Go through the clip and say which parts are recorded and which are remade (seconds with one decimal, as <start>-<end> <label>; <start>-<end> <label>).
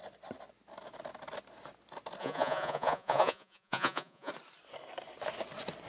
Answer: 0.0-2.2 recorded; 2.2-4.3 remade; 4.3-5.9 recorded